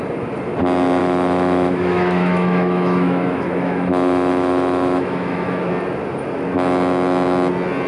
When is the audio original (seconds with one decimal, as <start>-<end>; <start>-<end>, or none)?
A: 0.0-1.0; 5.7-7.9